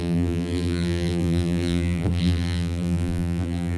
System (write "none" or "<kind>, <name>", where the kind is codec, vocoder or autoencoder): vocoder, BigVGAN v2